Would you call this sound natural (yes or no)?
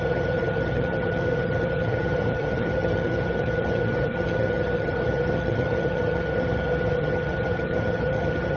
no